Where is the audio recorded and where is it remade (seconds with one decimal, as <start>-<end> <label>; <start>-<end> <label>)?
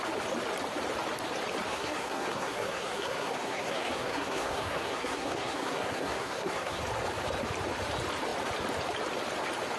0.0-1.7 recorded; 1.7-6.8 remade; 6.8-9.8 recorded